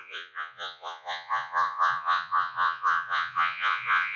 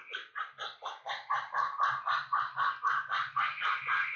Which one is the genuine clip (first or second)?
second